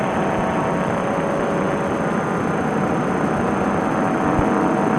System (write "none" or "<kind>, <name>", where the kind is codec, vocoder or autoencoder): none